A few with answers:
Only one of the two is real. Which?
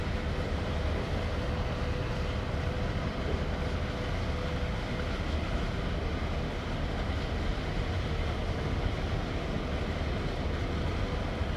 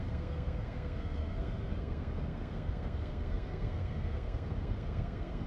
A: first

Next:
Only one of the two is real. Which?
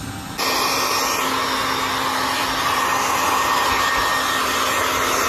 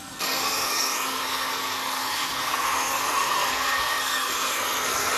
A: first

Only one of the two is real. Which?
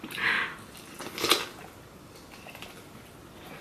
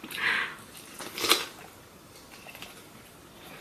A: first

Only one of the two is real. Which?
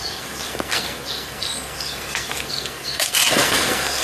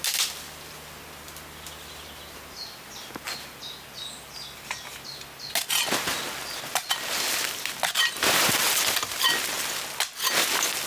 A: second